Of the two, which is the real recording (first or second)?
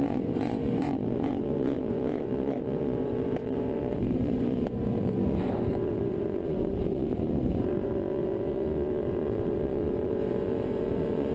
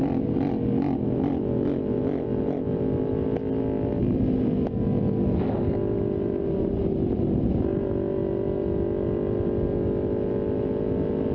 second